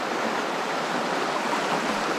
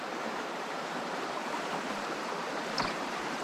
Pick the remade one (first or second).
second